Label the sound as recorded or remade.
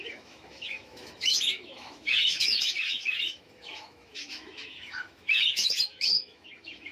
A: remade